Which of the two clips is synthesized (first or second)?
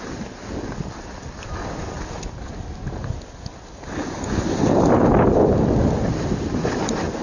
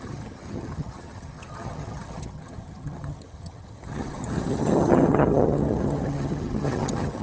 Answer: second